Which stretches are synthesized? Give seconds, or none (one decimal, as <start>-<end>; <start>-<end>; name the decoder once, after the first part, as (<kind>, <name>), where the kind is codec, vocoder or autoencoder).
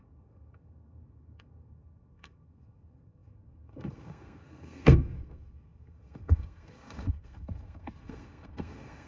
0.0-9.1 (codec, SNAC)